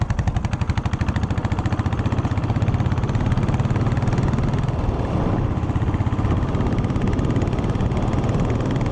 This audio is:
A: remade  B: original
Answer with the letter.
B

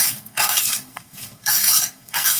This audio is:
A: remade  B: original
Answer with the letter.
A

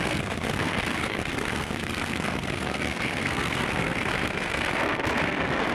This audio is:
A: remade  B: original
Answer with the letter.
A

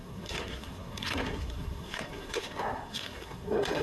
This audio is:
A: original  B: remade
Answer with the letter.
B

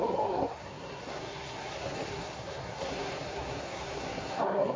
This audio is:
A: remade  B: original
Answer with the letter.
A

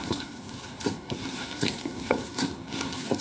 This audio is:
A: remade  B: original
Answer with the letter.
A